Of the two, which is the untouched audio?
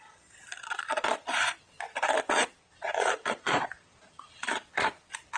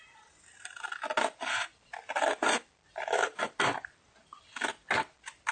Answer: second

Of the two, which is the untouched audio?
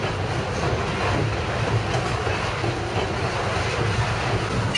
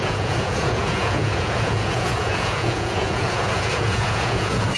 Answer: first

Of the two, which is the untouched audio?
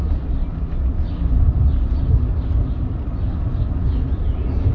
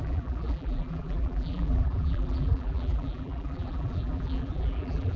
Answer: first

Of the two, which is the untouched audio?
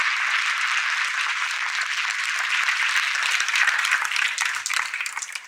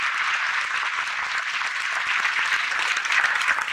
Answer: second